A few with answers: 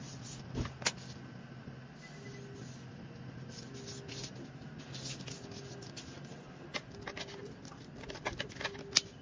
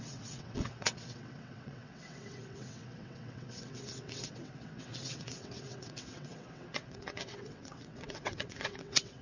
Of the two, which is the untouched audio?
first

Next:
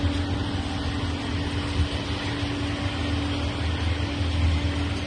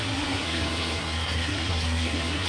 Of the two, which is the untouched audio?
first